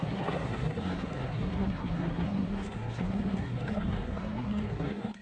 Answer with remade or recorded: remade